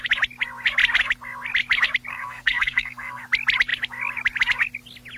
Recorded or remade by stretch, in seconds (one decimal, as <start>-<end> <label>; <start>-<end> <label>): 0.0-2.1 recorded; 2.1-3.2 remade; 3.2-5.2 recorded